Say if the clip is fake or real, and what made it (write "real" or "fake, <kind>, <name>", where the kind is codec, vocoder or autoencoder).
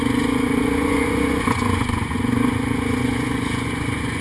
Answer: fake, vocoder, Vocos